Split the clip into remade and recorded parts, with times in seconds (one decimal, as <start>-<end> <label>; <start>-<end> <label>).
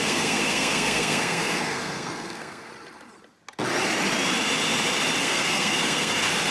0.0-2.7 remade; 2.7-5.2 recorded; 5.2-6.5 remade